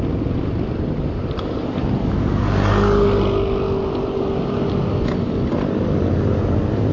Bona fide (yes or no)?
yes